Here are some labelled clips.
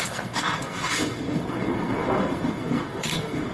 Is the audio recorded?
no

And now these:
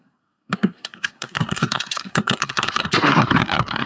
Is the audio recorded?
no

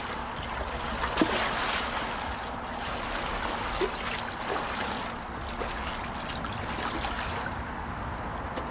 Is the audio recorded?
yes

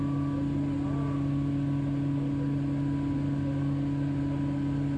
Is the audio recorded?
yes